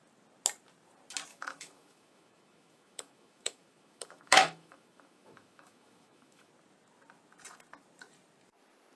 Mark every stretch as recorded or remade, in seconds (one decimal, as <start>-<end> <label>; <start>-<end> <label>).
0.0-1.3 recorded; 1.3-6.5 remade; 6.5-9.0 recorded